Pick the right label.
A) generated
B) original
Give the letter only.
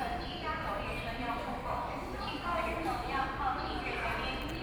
B